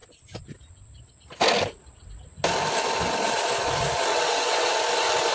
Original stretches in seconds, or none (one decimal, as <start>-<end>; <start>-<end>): 0.0-4.1; 4.7-5.3